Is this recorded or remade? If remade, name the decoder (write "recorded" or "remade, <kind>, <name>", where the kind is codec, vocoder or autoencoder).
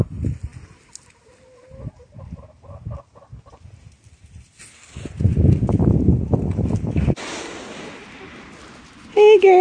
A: recorded